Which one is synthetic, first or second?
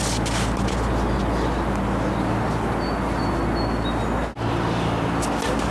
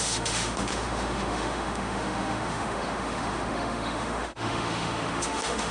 second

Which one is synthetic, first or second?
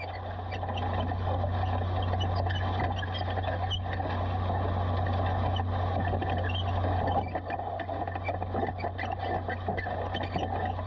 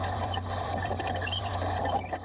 second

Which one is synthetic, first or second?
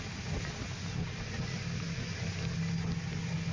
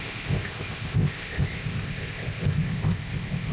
second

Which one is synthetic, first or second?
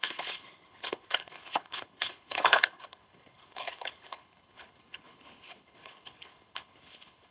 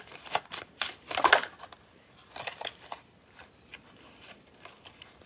first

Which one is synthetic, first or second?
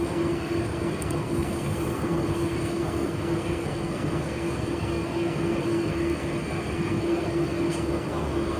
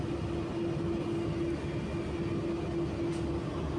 first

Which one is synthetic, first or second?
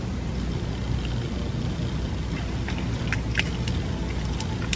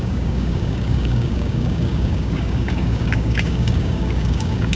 second